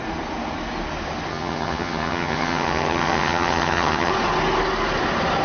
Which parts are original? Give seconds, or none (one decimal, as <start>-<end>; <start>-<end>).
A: 0.0-1.3; 4.1-5.4